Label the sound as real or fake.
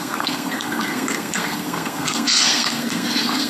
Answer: fake